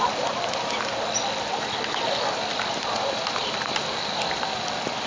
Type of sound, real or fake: real